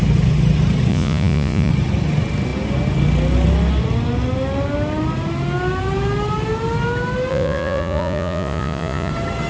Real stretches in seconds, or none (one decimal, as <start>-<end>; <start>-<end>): 0.0-0.9; 1.7-7.3; 9.1-9.5